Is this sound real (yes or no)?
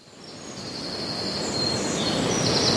yes